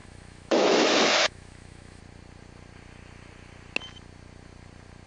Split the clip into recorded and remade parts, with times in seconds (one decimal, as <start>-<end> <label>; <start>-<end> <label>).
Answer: 0.0-2.0 remade; 2.0-5.1 recorded